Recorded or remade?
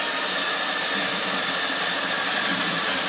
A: remade